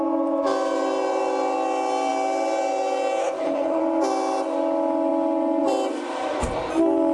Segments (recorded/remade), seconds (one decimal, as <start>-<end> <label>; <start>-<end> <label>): 0.0-3.2 recorded; 3.2-3.8 remade; 3.8-7.1 recorded